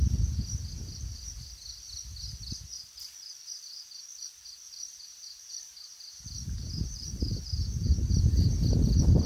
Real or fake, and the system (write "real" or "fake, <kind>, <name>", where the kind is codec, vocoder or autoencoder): real